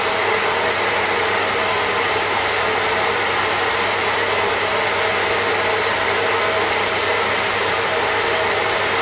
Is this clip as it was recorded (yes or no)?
yes